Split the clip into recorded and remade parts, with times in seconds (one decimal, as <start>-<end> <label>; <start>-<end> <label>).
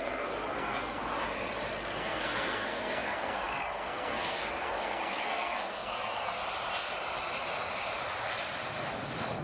0.0-1.0 remade; 1.0-1.7 recorded; 1.7-6.4 remade; 6.4-9.4 recorded